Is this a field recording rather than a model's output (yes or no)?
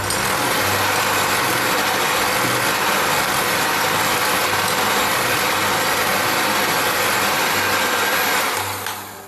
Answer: yes